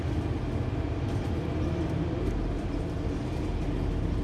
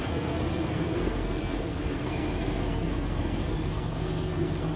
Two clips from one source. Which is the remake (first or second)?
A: second